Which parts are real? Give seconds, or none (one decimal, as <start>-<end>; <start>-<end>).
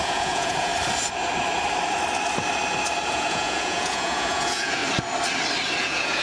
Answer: 0.7-3.1; 4.8-5.8